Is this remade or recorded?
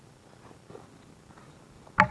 recorded